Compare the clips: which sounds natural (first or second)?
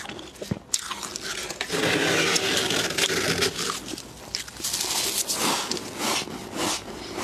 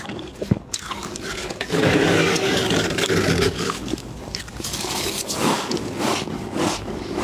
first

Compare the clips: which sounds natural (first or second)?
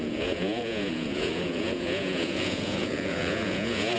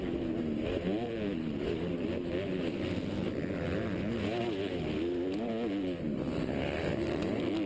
second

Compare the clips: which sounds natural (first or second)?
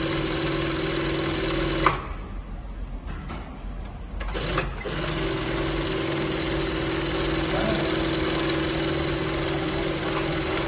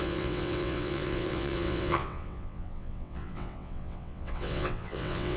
first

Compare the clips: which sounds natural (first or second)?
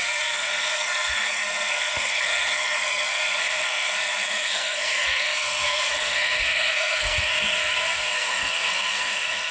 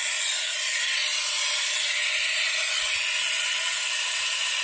second